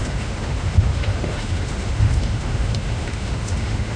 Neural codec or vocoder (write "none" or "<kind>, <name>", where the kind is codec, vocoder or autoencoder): autoencoder, DAC-VAE